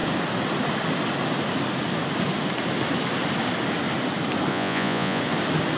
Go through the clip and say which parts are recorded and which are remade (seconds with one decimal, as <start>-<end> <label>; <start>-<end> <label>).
0.0-4.5 recorded; 4.5-5.2 remade; 5.2-5.8 recorded

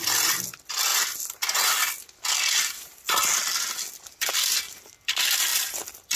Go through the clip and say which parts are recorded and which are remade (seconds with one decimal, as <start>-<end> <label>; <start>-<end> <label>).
0.0-6.2 recorded

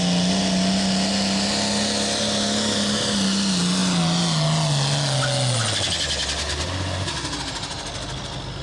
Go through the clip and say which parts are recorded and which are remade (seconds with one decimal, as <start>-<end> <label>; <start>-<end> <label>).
0.0-8.6 recorded

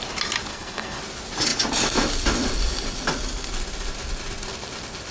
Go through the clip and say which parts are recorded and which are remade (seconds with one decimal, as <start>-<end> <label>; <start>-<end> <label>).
0.0-0.5 recorded; 0.5-1.0 remade; 1.0-5.1 recorded

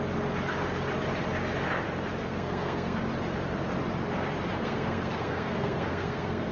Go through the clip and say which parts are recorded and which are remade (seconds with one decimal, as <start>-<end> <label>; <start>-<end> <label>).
0.0-2.2 recorded; 2.2-3.0 remade; 3.0-4.6 recorded; 4.6-6.5 remade

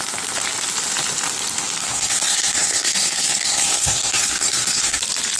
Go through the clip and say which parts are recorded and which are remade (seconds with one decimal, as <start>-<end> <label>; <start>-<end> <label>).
0.0-1.8 recorded; 1.8-5.0 remade; 5.0-5.4 recorded

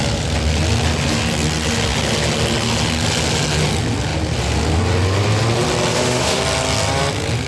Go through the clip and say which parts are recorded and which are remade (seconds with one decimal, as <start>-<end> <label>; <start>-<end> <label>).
0.0-5.9 recorded; 5.9-6.4 remade; 6.4-7.5 recorded

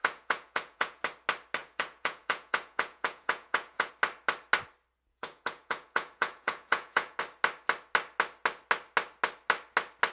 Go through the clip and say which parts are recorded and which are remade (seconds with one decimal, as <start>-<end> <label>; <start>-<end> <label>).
0.0-1.0 remade; 1.0-1.6 recorded; 1.6-3.9 remade; 3.9-5.1 recorded; 5.1-7.2 remade; 7.2-10.1 recorded